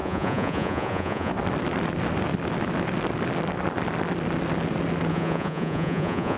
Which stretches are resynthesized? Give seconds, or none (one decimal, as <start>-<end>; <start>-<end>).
0.0-1.3; 5.1-6.4